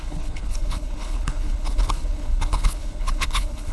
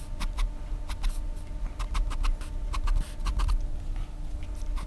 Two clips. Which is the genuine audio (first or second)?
second